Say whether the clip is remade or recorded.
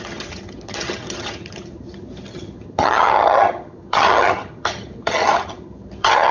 remade